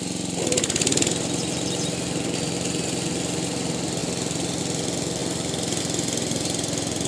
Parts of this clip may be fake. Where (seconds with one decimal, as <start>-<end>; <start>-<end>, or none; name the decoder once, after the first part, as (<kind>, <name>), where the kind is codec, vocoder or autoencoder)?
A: none